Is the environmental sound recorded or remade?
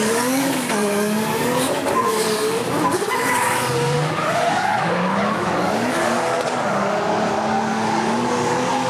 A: remade